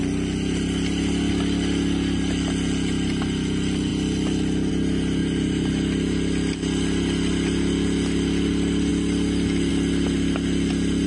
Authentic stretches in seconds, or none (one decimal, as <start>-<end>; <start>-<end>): 0.0-5.2; 5.7-11.1